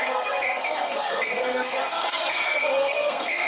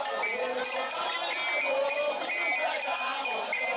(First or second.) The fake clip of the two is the first